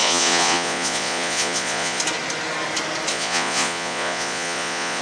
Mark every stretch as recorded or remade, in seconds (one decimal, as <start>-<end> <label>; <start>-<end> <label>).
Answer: 0.0-2.0 remade; 2.0-3.1 recorded; 3.1-5.0 remade